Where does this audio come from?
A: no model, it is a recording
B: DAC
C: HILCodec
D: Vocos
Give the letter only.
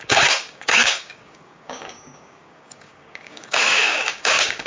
B